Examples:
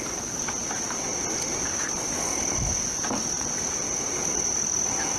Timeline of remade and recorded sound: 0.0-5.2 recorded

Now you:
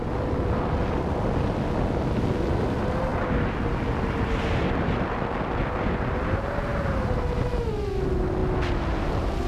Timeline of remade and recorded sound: 0.0-9.5 recorded

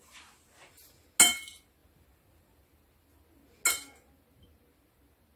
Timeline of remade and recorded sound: 0.0-5.4 recorded